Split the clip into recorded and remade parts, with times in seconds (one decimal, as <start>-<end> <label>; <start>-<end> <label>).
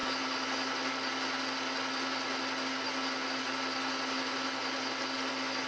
0.0-5.7 recorded